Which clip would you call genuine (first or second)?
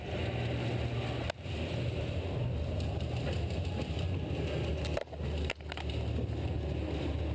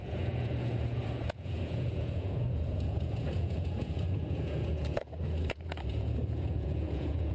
first